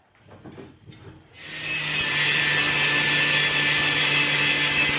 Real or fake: real